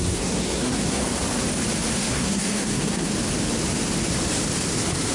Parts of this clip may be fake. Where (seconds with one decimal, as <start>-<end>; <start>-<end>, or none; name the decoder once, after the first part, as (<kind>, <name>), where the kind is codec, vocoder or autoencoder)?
0.0-1.0 (codec, SNAC); 1.9-3.1